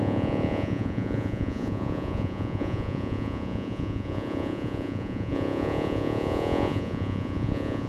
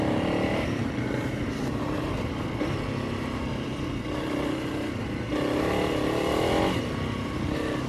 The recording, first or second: second